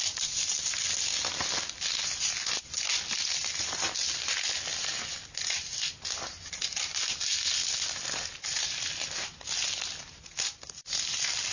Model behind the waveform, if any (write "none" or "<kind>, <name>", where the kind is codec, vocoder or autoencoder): none